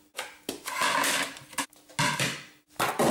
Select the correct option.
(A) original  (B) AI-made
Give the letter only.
A